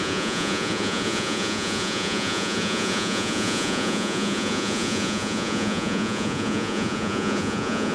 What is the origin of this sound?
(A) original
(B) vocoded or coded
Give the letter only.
B